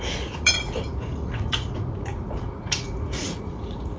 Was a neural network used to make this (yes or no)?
yes